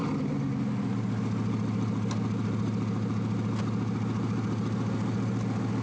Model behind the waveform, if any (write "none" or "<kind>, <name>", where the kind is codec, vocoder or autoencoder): none